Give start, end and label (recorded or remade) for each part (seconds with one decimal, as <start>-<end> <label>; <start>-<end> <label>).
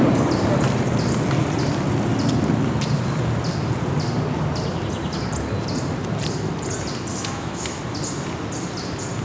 0.0-7.1 recorded; 7.1-7.8 remade; 7.8-9.2 recorded